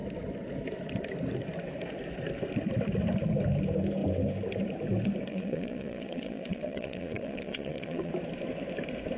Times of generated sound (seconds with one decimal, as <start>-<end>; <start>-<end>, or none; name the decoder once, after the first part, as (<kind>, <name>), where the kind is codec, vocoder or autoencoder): 5.3-8.1 (vocoder, Vocos)

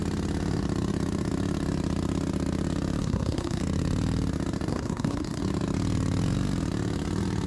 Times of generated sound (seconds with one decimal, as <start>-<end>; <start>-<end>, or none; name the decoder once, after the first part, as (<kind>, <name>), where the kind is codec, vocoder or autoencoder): 3.0-3.6 (codec, SNAC); 4.7-5.4

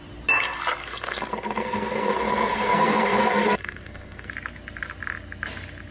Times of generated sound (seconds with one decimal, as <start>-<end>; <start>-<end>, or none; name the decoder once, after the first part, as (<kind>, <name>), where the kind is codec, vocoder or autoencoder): 0.8-4.3 (codec, SNAC)

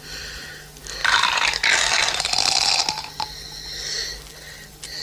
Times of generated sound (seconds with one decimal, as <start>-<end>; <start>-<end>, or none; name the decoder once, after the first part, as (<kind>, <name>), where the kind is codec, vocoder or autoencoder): 1.0-2.3 (vocoder, BigVGAN v2)

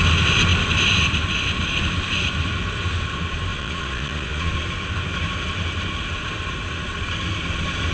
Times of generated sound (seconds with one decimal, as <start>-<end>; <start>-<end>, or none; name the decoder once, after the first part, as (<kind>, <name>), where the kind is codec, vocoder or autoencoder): 3.5-4.5 (vocoder, Vocos)

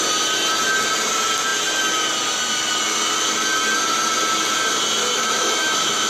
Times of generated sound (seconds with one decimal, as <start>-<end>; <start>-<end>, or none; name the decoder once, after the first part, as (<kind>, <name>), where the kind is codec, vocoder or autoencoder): 5.0-6.1 (autoencoder, DAC-VAE)

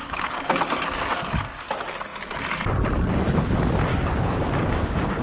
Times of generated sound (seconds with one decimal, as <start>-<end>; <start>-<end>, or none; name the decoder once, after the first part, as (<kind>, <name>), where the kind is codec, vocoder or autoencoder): 0.0-0.6 (codec, DAC); 3.9-5.2

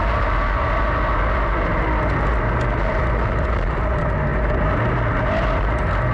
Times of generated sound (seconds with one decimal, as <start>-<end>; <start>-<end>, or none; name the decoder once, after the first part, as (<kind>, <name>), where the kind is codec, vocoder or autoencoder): none